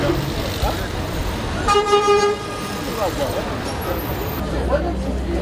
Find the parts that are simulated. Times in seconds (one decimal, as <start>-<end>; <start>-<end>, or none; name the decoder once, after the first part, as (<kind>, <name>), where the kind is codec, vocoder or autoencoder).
none

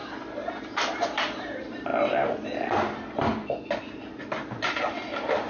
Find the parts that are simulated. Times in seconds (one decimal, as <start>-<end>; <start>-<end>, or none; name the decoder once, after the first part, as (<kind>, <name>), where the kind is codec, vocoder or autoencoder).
1.0-1.9 (vocoder, BigVGAN v2); 4.7-5.5

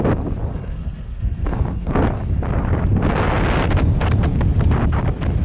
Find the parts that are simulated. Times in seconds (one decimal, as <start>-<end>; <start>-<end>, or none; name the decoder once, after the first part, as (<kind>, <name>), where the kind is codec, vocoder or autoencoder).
0.5-2.0 (codec, SNAC)

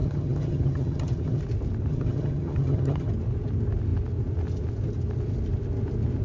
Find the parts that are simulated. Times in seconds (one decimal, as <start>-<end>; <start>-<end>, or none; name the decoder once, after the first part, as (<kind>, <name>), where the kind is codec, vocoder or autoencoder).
0.0-1.4 (vocoder, HiFi-GAN); 1.9-3.1

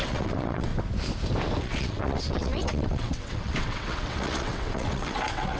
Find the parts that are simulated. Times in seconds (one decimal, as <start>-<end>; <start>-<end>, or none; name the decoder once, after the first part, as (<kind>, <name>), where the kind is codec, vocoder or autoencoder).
0.0-0.7 (vocoder, WaveNeXt); 1.6-5.6

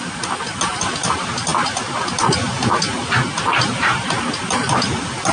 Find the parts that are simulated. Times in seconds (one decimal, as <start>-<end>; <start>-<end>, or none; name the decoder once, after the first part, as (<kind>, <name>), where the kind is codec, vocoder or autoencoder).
none

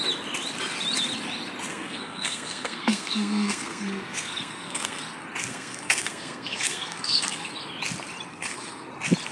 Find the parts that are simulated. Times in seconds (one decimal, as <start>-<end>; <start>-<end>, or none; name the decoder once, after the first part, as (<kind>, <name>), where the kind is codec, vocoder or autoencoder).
1.7-5.0 (codec, SNAC); 5.5-7.5; 8.3-8.9